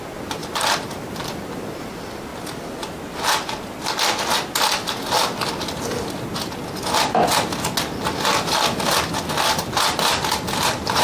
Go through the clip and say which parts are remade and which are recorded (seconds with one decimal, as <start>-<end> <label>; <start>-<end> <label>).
0.0-0.4 recorded; 0.4-1.1 remade; 1.1-11.0 recorded